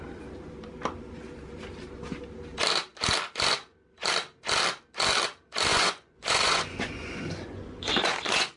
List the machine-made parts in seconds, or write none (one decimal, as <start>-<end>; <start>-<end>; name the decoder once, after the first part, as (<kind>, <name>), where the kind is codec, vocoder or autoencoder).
5.7-8.6 (vocoder, Vocos)